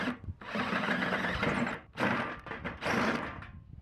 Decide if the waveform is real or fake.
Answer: real